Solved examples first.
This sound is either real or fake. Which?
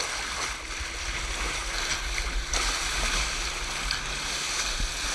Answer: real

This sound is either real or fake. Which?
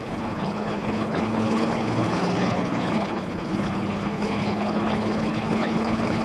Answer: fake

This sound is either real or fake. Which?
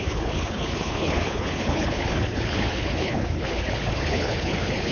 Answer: fake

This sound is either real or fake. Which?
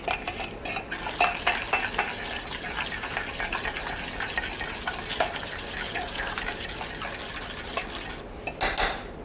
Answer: real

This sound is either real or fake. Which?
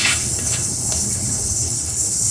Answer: fake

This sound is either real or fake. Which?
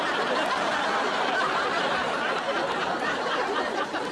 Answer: real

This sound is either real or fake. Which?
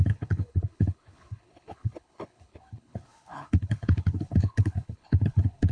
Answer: fake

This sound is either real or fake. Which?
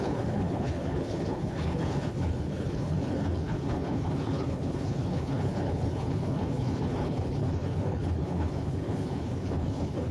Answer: fake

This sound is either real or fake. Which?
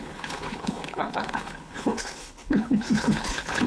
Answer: fake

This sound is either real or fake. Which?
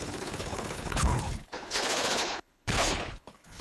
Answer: fake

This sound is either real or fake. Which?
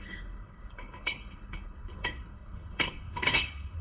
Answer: fake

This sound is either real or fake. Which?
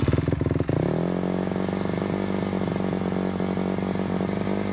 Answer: real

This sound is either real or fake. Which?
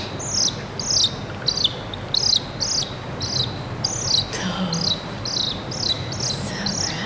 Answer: real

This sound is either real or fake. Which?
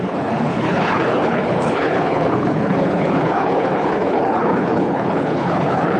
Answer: fake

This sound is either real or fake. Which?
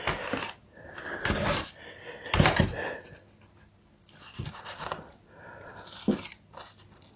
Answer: real